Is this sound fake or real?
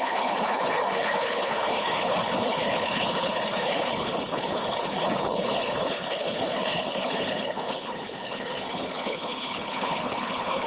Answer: fake